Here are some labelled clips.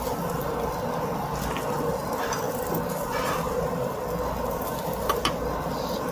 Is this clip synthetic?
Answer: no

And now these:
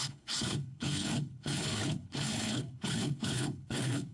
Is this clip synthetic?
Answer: yes